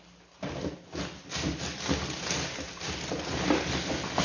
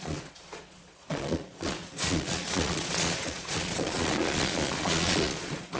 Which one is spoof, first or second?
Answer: second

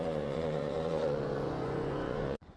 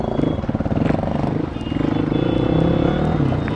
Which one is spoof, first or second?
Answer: first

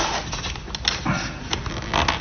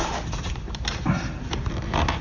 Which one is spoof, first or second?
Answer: second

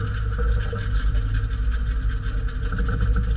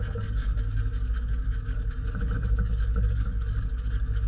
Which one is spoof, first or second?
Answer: second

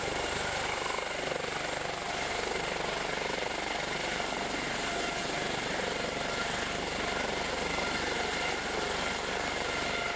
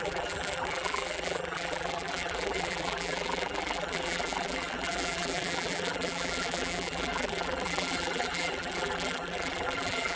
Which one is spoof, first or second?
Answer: second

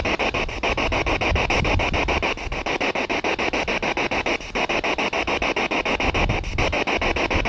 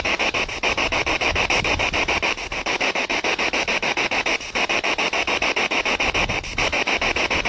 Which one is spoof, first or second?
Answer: second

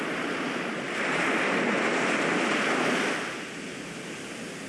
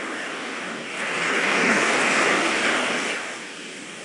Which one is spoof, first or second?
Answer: second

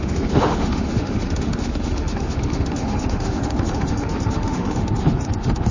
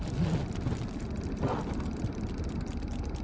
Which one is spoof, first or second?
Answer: first